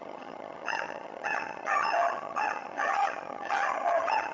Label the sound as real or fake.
fake